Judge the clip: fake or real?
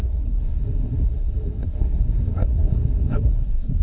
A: fake